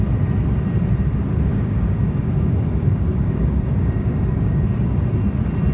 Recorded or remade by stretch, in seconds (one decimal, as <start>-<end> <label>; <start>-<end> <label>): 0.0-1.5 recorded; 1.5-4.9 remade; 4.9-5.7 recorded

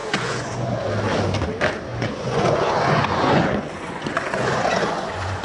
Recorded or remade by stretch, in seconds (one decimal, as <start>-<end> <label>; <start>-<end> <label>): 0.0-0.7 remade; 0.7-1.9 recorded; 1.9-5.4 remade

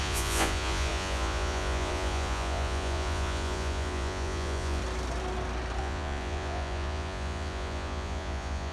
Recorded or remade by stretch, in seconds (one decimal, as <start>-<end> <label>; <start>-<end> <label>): 0.0-4.8 remade; 4.8-5.8 recorded; 5.8-8.7 remade

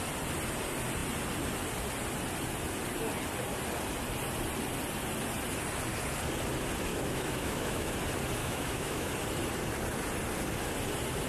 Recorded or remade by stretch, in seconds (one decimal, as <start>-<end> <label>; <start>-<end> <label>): 0.0-6.9 recorded; 6.9-7.9 remade; 7.9-8.4 recorded; 8.4-9.1 remade; 9.1-11.3 recorded

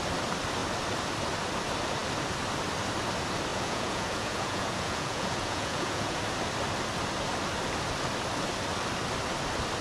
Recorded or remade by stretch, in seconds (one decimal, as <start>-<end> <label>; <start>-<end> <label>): 0.0-3.5 recorded; 3.5-6.2 remade; 6.2-9.8 recorded

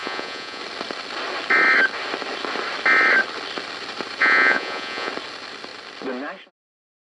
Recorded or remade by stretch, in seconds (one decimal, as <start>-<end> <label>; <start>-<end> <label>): 0.0-0.6 remade; 0.6-4.2 recorded; 4.2-5.1 remade; 5.1-7.2 recorded

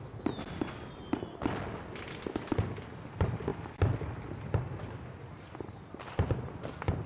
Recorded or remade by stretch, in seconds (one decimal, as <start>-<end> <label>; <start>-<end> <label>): 0.0-7.1 recorded

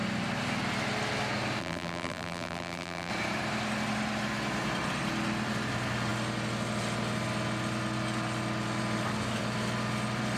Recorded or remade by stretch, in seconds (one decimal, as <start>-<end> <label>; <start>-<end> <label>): 0.0-1.6 recorded; 1.6-3.1 remade; 3.1-10.4 recorded